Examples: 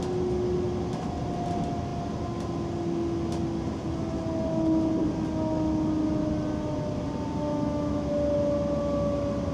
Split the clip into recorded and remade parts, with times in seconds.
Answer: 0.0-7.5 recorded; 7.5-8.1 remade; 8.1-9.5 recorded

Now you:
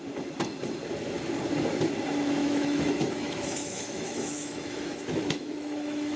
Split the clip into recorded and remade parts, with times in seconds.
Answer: 0.0-2.4 recorded; 2.4-6.2 remade

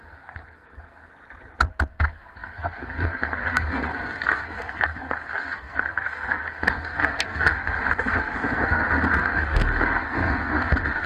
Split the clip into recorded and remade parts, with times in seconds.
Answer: 0.0-1.1 remade; 1.1-1.9 recorded; 1.9-11.1 remade

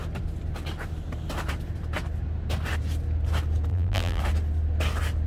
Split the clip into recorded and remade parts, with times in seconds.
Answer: 0.0-3.7 recorded; 3.7-4.2 remade; 4.2-5.3 recorded

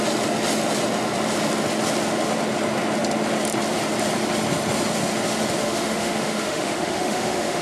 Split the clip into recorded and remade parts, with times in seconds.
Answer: 0.0-5.6 recorded; 5.6-7.6 remade

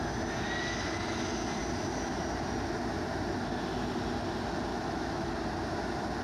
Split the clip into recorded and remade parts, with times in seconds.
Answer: 0.0-4.7 recorded; 4.7-5.3 remade; 5.3-6.2 recorded

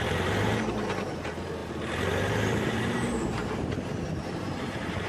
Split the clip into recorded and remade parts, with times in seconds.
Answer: 0.0-5.1 remade